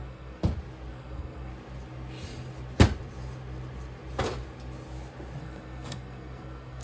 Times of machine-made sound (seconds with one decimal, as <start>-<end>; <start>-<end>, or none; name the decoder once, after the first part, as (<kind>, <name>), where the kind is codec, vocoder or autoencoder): 0.0-0.4 (codec, SNAC); 0.9-1.5; 5.4-6.8